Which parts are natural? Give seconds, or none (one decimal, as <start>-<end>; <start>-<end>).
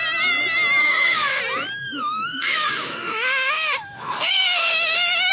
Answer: 0.0-0.8; 1.4-1.8